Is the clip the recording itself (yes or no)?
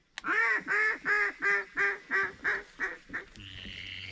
yes